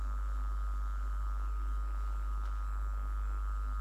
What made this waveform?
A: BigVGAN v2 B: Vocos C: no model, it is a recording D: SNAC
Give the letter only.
D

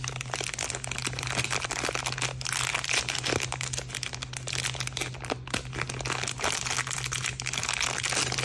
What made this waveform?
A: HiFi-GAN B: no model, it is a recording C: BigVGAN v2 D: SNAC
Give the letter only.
B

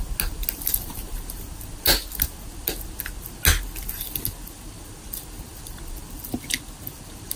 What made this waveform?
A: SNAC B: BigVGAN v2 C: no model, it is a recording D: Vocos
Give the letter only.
C